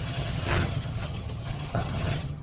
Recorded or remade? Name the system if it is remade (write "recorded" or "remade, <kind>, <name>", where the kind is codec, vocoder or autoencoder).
remade, vocoder, HiFi-GAN